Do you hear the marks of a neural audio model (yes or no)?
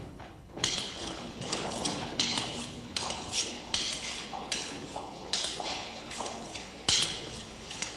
yes